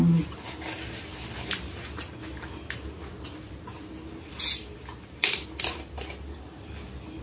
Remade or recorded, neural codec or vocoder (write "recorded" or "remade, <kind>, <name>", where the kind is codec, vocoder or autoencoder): recorded